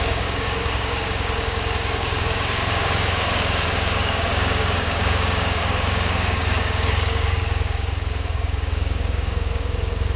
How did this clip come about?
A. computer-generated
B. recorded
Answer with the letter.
A